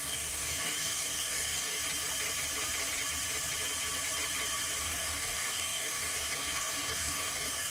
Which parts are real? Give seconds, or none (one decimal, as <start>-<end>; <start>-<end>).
1.8-4.8